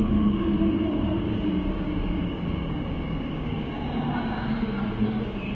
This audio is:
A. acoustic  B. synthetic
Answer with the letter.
B